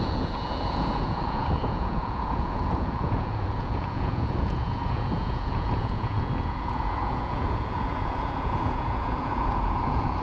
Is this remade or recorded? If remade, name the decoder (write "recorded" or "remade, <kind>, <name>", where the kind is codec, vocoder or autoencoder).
remade, vocoder, Vocos